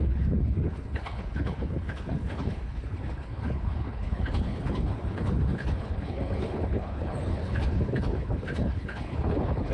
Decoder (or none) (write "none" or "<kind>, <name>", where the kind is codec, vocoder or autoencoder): codec, HILCodec